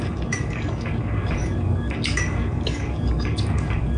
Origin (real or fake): fake